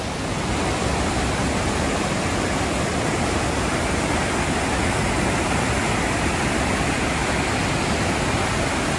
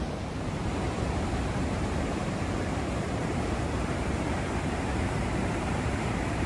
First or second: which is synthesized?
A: second